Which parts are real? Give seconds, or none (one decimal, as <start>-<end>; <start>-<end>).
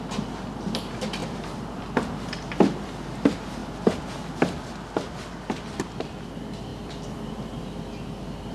0.0-1.2; 1.8-6.7; 7.3-8.5